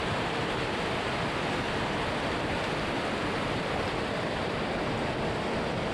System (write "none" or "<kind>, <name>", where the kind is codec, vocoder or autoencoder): vocoder, BigVGAN v2